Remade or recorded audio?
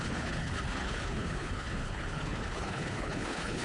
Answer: remade